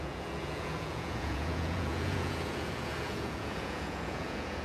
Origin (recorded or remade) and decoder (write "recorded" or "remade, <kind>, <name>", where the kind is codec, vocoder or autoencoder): remade, vocoder, Vocos